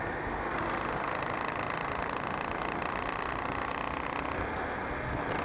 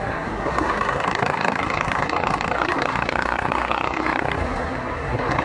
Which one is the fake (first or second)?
second